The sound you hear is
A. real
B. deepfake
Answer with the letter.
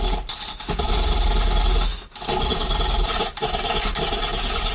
A